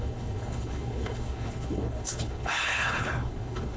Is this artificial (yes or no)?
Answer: yes